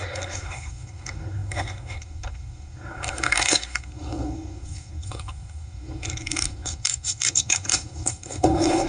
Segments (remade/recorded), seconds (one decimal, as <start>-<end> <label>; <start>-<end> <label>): 0.0-8.9 remade